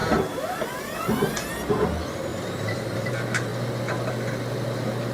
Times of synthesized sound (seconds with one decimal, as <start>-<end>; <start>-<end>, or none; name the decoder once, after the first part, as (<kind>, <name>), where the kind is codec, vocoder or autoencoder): 2.3-3.1 (vocoder, BigVGAN v2)